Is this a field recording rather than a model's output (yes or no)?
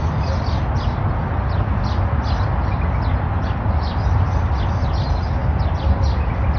yes